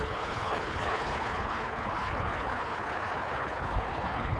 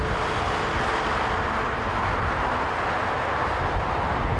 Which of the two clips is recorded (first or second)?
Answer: second